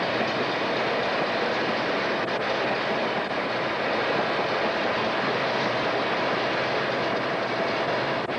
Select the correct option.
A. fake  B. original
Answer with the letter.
B